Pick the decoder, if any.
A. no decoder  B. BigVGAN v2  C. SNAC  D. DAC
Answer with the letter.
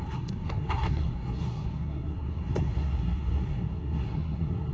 C